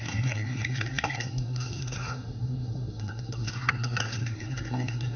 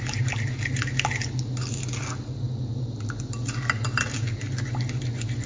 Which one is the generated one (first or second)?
first